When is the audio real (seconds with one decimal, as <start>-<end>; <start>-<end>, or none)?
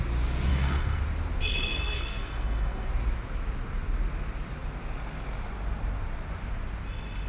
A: 0.0-0.5; 1.0-1.5; 2.9-7.3